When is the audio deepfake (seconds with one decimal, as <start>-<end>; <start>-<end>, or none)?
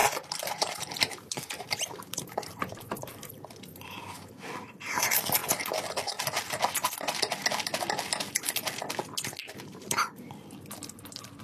0.0-3.3; 9.4-10.3